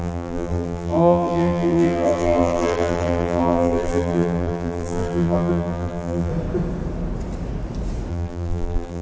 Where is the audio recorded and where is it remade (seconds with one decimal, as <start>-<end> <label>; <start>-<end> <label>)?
0.0-6.3 remade; 6.3-8.1 recorded; 8.1-9.0 remade